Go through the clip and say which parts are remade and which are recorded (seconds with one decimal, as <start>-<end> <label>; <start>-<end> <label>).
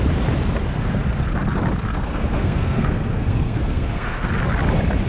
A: 0.0-1.9 recorded; 1.9-4.3 remade; 4.3-5.1 recorded